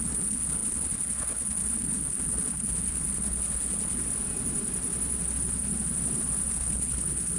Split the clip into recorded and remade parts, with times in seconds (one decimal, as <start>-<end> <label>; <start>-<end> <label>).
0.0-4.0 remade; 4.0-6.5 recorded; 6.5-7.4 remade